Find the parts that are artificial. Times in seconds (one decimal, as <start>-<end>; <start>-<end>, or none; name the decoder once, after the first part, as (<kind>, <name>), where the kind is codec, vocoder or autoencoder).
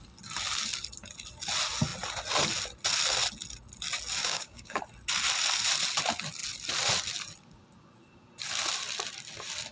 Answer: 4.2-4.8 (codec, DAC)